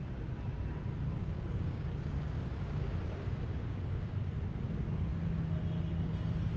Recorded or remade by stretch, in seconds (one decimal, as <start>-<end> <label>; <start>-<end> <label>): 0.0-1.2 recorded; 1.2-4.3 remade; 4.3-6.6 recorded